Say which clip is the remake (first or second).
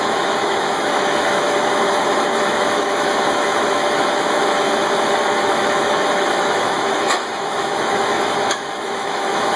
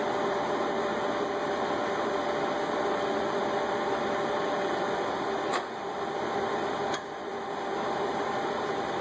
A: first